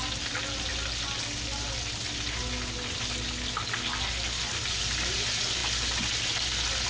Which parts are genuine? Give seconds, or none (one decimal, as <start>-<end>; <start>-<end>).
0.0-6.9